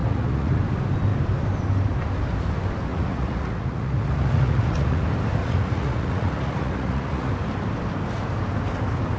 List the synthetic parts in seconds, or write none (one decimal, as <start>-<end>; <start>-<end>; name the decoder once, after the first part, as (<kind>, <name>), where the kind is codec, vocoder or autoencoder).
0.0-0.6 (vocoder, Vocos); 2.9-5.0; 5.4-7.3